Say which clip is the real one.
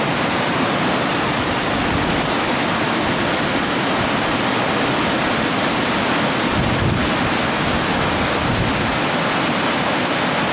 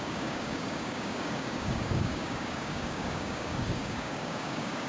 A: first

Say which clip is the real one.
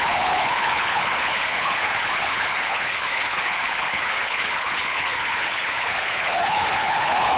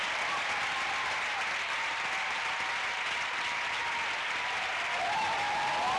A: second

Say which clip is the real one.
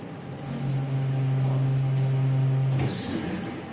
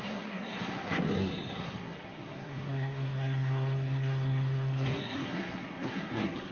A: first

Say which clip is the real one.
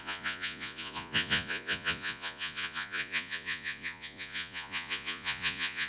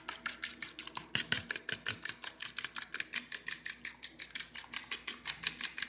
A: second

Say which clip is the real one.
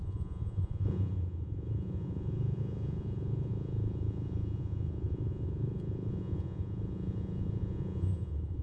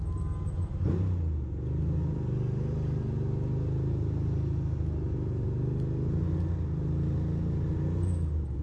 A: second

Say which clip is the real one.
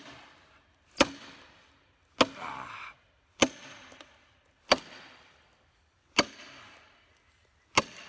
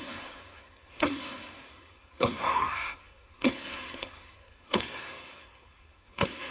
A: first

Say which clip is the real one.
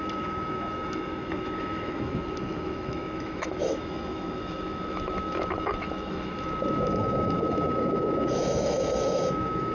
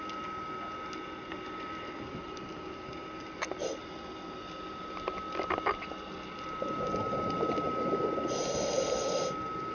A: second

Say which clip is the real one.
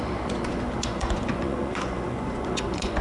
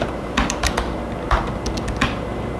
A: second